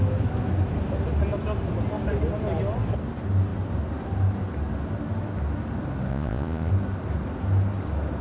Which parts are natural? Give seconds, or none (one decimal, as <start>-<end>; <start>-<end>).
0.0-6.1; 6.7-8.2

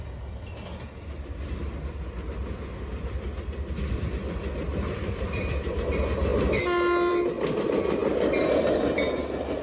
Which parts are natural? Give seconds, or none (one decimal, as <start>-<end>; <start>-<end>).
0.0-9.6

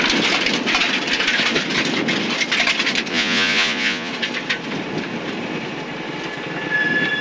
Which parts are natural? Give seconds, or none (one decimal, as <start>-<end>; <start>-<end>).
0.0-3.1; 4.1-7.2

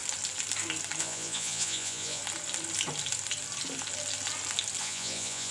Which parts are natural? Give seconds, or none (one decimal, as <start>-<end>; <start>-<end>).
0.0-1.0; 2.2-4.8